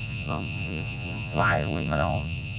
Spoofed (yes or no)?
yes